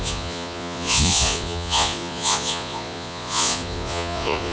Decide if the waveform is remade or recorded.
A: remade